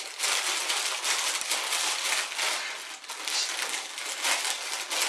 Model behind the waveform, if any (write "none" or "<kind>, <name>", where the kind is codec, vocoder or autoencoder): none